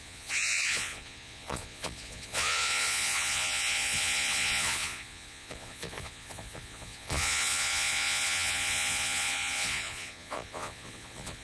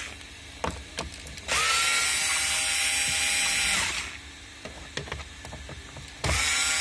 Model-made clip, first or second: first